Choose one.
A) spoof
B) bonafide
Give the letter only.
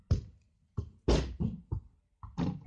B